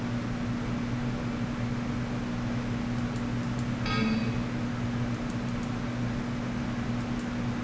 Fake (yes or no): no